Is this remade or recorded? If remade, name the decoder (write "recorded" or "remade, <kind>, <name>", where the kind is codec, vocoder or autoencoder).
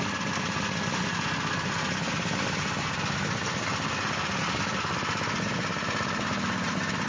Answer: recorded